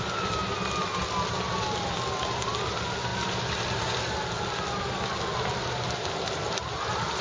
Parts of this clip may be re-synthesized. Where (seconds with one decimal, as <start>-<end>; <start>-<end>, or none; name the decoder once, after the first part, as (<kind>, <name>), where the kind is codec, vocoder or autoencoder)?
none